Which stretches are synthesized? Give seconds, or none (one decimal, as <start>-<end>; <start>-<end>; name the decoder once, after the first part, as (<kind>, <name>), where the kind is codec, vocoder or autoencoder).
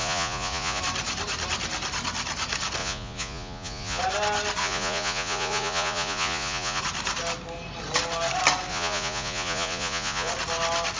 0.0-0.8 (vocoder, Vocos); 2.8-4.0; 4.6-6.8; 8.7-10.3